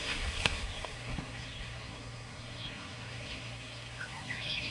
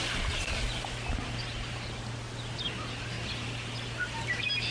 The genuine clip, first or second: second